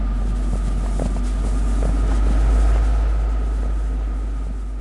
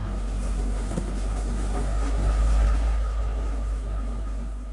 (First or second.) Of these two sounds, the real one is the first